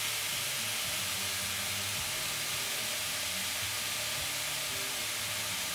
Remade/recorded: recorded